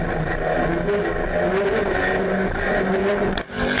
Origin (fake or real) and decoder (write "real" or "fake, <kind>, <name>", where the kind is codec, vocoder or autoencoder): real